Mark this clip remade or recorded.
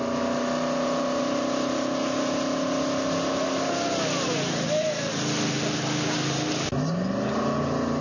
recorded